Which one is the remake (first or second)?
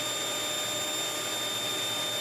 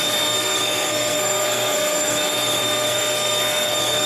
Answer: second